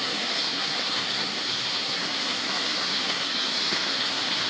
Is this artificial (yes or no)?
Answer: yes